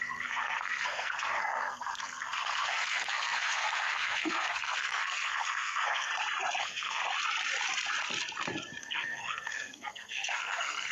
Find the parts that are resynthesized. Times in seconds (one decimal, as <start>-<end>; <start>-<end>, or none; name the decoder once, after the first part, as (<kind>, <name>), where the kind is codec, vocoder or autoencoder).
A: 0.0-6.1 (codec, SNAC); 6.6-7.0; 8.8-10.9